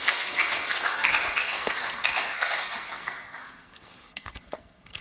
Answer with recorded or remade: remade